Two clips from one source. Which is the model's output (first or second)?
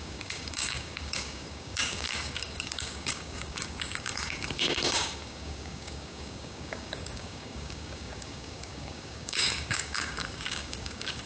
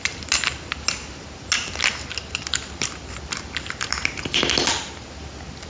first